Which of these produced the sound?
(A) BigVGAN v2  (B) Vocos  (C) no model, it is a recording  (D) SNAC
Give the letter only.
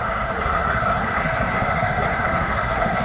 D